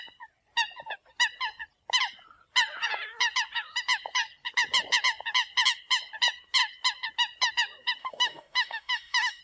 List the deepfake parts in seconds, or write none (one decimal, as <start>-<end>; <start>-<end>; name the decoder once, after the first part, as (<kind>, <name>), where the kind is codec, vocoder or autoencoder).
8.0-9.4 (autoencoder, DAC-VAE)

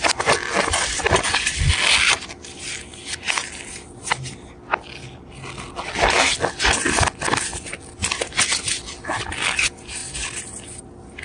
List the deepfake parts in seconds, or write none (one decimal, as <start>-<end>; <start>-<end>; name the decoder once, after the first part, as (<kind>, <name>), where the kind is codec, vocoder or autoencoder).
none

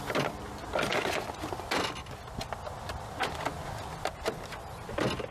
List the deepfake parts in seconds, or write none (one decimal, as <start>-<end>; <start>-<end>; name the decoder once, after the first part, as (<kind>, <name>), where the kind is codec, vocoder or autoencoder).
none

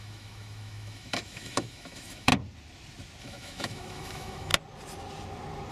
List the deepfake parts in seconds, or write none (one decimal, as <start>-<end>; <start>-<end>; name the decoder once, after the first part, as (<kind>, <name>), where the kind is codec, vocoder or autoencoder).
0.0-2.3 (autoencoder, DAC-VAE); 3.2-4.5

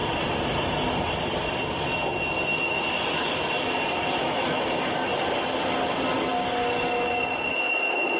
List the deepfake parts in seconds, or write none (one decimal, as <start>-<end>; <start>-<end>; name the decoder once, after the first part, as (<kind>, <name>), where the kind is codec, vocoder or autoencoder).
4.2-5.2 (autoencoder, DAC-VAE)

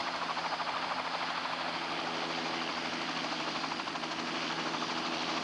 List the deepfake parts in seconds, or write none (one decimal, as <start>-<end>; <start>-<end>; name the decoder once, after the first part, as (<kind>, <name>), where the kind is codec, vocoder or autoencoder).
none

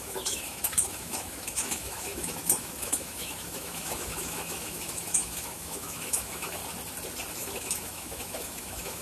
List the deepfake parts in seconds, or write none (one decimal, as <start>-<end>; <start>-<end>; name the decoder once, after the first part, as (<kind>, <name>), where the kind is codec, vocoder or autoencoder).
0.0-6.6 (autoencoder, DAC-VAE); 7.3-9.0